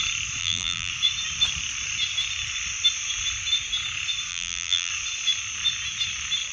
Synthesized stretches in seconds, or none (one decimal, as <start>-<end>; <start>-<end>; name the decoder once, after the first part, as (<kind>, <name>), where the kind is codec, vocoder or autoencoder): 0.4-0.9 (vocoder, BigVGAN v2); 4.3-4.9